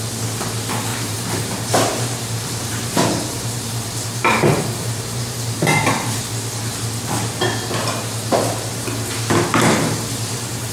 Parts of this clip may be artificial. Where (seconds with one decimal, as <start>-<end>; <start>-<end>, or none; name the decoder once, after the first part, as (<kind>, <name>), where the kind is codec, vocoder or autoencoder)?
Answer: 0.9-6.2 (vocoder, BigVGAN v2); 8.7-10.7